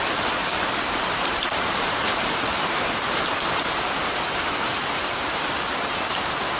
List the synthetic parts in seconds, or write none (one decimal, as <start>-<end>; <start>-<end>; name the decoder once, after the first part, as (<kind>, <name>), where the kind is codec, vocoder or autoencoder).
0.4-3.4 (vocoder, BigVGAN v2)